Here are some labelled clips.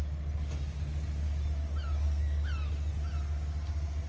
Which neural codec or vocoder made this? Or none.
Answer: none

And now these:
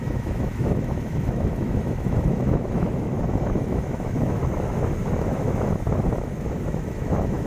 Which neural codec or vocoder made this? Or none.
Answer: autoencoder, DAC-VAE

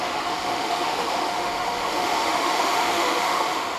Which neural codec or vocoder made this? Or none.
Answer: autoencoder, DAC-VAE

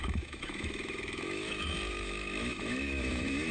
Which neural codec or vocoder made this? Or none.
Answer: autoencoder, DAC-VAE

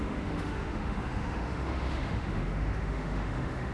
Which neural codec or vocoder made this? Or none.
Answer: autoencoder, DAC-VAE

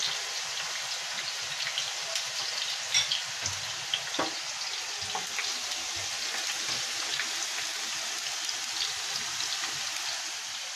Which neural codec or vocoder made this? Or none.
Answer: none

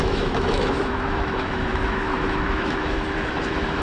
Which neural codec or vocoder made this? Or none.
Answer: autoencoder, DAC-VAE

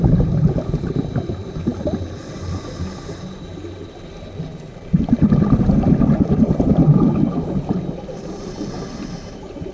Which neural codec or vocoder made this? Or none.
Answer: none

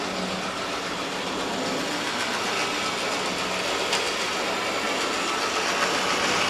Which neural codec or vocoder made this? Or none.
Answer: none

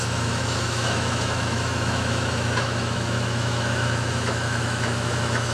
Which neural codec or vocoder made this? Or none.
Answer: autoencoder, DAC-VAE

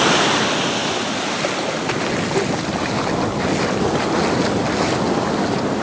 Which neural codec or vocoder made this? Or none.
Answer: none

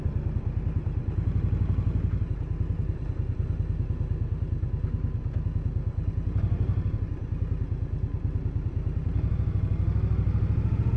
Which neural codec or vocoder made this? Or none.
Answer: none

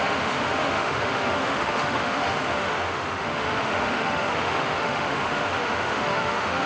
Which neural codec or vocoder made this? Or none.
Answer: autoencoder, DAC-VAE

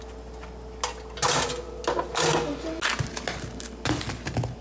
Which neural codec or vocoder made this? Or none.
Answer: none